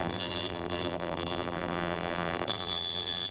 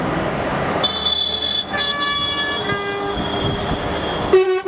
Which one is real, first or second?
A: second